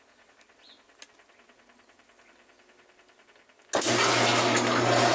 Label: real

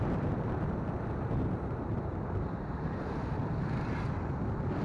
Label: fake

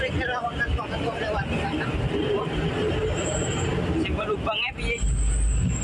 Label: real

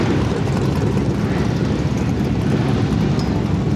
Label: real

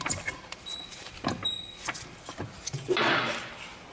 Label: real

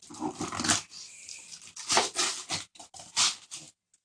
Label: real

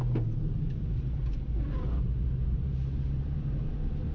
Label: real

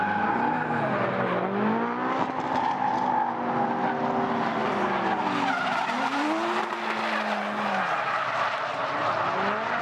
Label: real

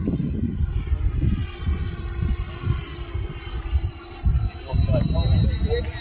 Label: fake